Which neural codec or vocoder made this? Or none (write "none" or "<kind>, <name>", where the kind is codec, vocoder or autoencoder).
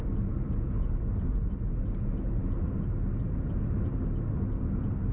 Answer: none